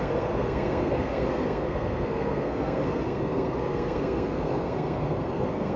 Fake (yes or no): yes